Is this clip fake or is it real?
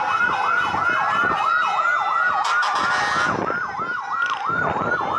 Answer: real